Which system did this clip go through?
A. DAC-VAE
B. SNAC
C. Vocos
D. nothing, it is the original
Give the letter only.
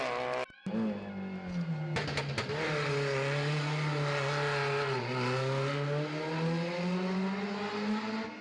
D